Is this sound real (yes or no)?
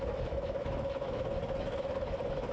no